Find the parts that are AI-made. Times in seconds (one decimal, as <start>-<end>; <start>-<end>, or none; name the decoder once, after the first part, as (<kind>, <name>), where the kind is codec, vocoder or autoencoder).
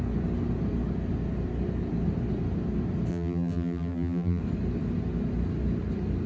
3.1-4.4 (vocoder, BigVGAN v2)